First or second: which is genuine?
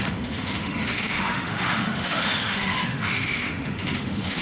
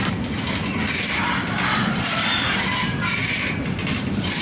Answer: second